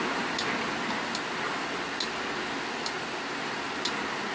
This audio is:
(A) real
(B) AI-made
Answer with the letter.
A